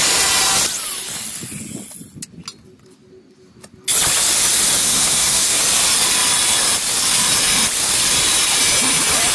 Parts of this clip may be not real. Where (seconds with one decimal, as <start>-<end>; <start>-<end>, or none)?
4.8-5.6

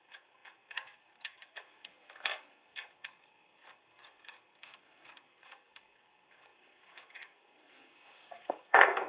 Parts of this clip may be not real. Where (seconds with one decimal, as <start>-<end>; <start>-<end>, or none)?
0.0-9.1

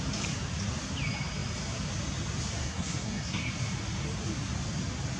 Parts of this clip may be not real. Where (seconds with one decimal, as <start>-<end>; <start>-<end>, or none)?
2.6-3.5

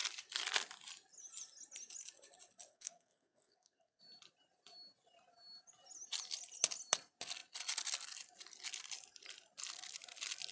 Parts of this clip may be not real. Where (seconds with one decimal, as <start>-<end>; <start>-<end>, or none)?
2.7-4.0

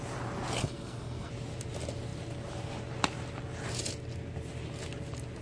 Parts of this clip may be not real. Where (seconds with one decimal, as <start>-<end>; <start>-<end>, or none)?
0.6-1.3

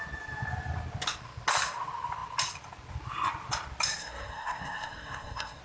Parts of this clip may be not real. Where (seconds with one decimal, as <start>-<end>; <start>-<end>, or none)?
4.0-5.6

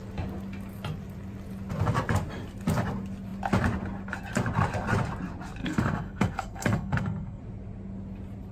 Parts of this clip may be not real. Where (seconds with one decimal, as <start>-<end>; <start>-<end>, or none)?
5.6-7.4

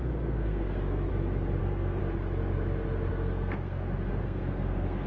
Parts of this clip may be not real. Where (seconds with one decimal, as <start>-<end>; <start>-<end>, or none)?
0.0-1.1; 1.6-2.0; 3.1-5.1